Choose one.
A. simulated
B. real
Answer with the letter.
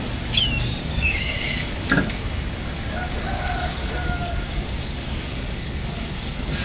A